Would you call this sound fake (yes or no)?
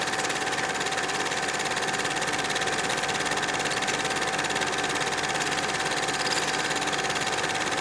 no